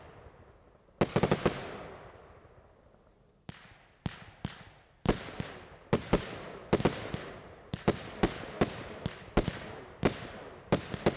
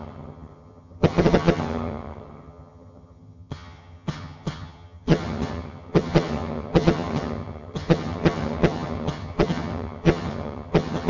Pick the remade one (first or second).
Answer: second